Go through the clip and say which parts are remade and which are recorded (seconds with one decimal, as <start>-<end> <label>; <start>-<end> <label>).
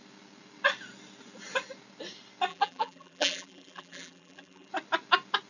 0.0-2.5 recorded; 2.5-4.7 remade; 4.7-5.5 recorded